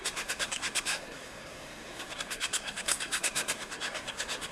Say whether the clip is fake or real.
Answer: fake